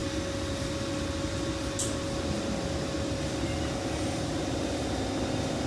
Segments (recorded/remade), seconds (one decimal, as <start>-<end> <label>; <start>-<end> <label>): 0.0-5.7 recorded